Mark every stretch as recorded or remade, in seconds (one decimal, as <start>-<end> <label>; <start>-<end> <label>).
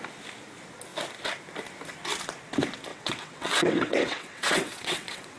0.0-2.9 recorded; 2.9-5.4 remade